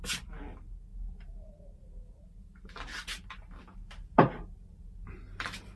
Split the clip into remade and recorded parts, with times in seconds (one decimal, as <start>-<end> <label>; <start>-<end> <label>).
0.0-5.8 recorded